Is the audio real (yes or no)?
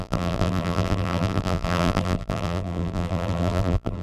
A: no